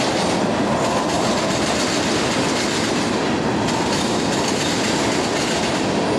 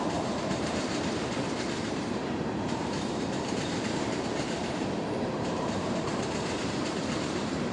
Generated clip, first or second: second